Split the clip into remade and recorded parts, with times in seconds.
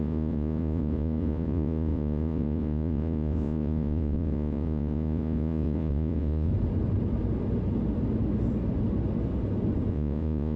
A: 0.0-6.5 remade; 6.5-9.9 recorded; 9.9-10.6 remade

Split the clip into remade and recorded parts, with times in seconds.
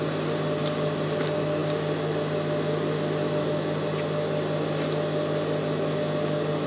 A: 0.0-6.7 recorded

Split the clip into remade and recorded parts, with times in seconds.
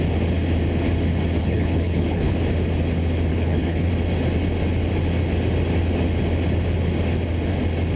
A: 0.0-1.4 recorded; 1.4-2.3 remade; 2.3-3.3 recorded; 3.3-3.9 remade; 3.9-8.0 recorded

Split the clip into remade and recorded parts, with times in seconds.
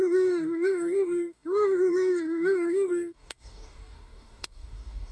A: 0.0-5.1 remade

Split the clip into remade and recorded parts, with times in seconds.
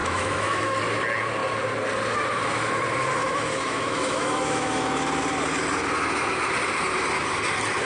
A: 0.0-0.8 remade; 0.8-3.2 recorded; 3.2-4.8 remade; 4.8-7.8 recorded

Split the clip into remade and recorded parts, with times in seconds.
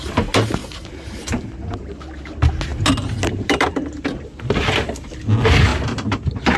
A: 0.0-0.6 recorded; 0.6-1.5 remade; 1.5-5.7 recorded; 5.7-6.6 remade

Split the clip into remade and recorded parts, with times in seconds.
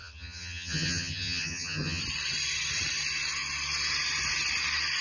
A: 0.0-2.0 remade; 2.0-5.0 recorded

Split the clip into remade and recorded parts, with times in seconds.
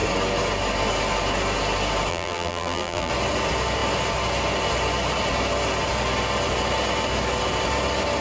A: 0.0-2.1 recorded; 2.1-3.1 remade; 3.1-8.2 recorded